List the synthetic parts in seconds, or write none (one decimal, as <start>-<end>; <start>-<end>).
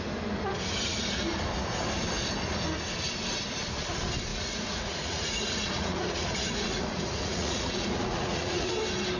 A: 4.3-8.7